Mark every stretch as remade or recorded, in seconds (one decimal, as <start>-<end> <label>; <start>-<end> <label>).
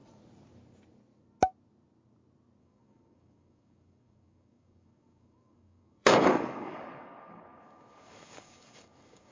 0.0-2.6 recorded; 2.6-9.3 remade